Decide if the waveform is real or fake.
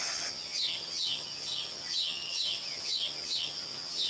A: fake